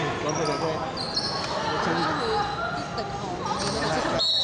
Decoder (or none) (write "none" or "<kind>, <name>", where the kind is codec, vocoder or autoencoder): none